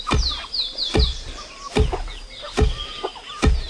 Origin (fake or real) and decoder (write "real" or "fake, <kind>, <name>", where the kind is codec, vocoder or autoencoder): real